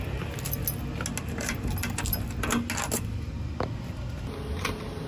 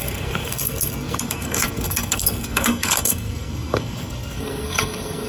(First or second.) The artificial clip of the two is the second